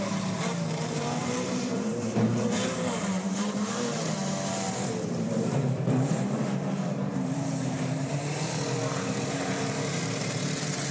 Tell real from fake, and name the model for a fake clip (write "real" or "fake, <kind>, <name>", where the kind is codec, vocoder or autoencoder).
fake, vocoder, BigVGAN v2